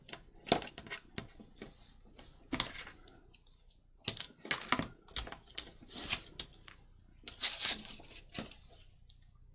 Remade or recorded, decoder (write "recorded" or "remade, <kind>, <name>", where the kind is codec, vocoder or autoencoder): recorded